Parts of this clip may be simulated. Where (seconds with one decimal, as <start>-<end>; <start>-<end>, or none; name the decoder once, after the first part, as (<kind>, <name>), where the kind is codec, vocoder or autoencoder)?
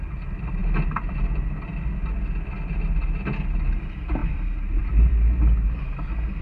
4.2-4.8 (vocoder, BigVGAN v2)